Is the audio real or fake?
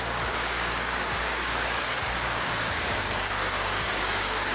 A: fake